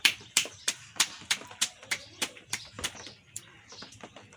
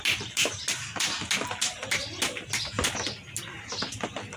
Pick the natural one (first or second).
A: second